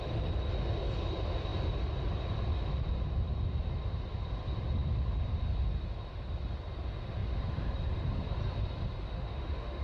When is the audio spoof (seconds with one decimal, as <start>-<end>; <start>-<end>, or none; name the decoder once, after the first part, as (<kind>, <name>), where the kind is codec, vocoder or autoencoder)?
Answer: 9.1-9.8 (autoencoder, DAC-VAE)